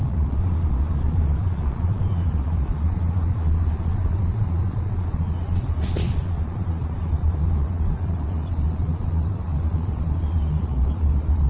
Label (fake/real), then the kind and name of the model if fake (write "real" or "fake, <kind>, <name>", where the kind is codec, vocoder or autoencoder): fake, vocoder, Vocos